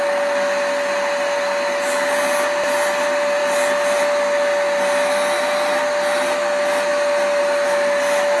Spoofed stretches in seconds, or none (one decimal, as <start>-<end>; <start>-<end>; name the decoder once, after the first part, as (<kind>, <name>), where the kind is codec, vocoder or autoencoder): none

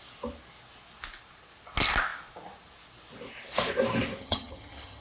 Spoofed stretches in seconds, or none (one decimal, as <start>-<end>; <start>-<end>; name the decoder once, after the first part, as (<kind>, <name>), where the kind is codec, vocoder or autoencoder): 4.2-5.0 (vocoder, HiFi-GAN)

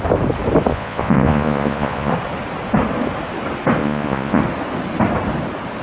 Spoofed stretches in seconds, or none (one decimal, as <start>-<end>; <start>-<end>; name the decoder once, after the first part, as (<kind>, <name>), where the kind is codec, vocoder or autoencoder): 0.7-2.1 (vocoder, Vocos); 3.8-4.4

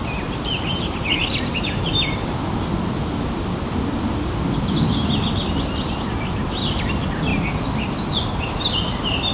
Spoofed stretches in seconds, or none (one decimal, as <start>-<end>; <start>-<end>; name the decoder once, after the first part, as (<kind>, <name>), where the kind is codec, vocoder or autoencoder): none